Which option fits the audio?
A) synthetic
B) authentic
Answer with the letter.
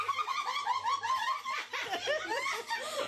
B